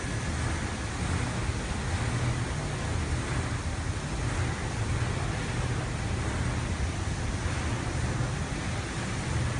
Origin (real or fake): real